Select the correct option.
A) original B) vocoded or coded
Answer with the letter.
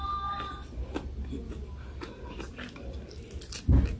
A